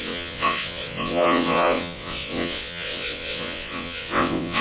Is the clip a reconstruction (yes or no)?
yes